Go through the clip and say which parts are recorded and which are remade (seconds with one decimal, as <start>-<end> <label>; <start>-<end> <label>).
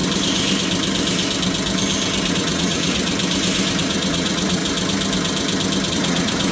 0.0-2.3 recorded; 2.3-3.1 remade; 3.1-3.8 recorded; 3.8-4.6 remade; 4.6-5.9 recorded; 5.9-6.5 remade